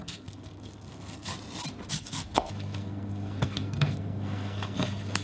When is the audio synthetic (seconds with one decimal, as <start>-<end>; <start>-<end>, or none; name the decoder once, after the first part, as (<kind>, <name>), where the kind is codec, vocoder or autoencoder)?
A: 0.0-1.3 (codec, SNAC); 1.9-5.2